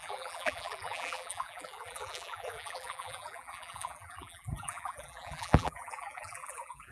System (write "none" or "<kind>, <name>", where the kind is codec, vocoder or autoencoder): vocoder, BigVGAN v2